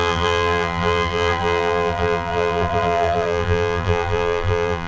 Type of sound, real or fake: fake